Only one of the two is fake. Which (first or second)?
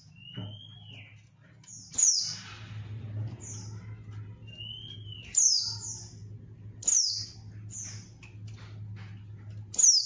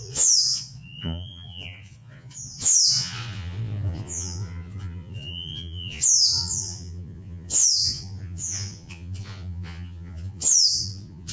second